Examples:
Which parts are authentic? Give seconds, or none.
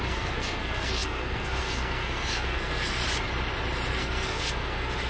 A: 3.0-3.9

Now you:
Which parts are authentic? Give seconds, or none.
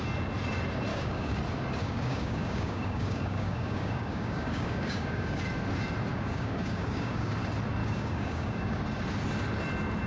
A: 0.0-0.9; 1.4-1.8; 5.4-6.1; 7.3-7.8; 8.8-10.1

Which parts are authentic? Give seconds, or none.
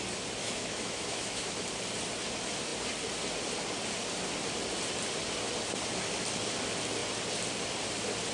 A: 0.0-0.4; 1.6-8.3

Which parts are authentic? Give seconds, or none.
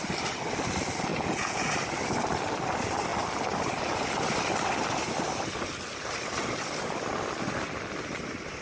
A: 0.0-1.1; 1.7-8.6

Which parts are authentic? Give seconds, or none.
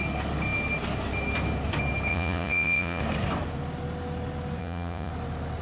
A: 0.0-2.1; 3.0-4.6; 5.1-5.6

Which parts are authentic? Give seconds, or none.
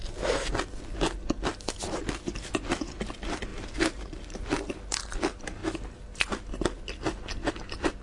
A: 0.0-3.5; 4.4-8.0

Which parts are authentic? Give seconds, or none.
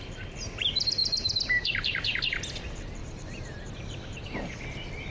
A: 0.0-1.0; 2.2-3.0; 4.6-5.1